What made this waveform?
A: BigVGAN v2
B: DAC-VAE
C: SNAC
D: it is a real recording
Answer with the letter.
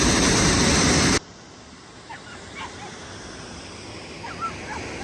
D